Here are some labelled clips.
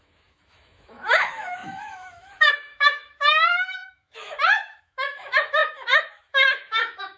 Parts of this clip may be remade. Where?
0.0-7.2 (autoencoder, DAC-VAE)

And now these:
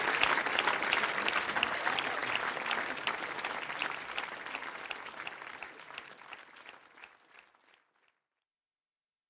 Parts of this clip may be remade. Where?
none

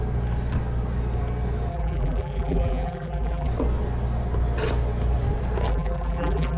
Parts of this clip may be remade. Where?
1.7-3.5 (vocoder, BigVGAN v2); 5.7-6.6

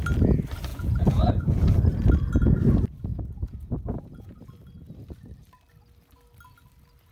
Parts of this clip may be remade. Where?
0.7-1.8 (vocoder, Vocos); 3.1-4.4

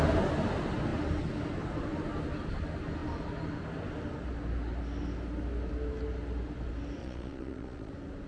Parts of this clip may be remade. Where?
7.0-7.9 (vocoder, Vocos)

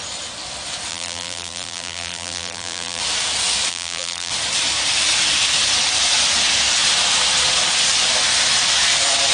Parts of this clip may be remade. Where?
0.9-3.0 (vocoder, BigVGAN v2); 3.7-4.3